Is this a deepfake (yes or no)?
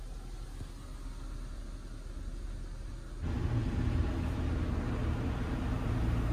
no